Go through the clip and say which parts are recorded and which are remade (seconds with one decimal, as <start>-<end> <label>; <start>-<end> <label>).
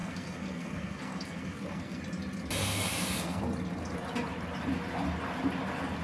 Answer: 0.0-2.0 remade; 2.0-2.6 recorded; 2.6-3.4 remade; 3.4-6.0 recorded